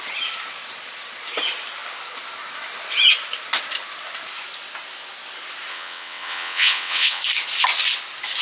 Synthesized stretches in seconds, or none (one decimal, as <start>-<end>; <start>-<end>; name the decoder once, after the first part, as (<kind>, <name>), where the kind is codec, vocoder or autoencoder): 5.7-7.2 (vocoder, WaveNeXt)